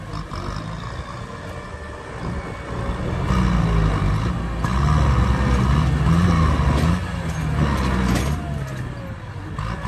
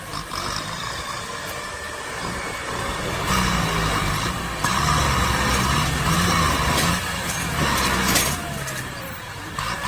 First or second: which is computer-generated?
second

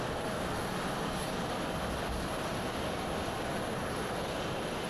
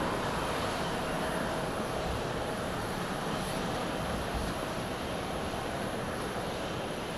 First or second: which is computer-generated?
second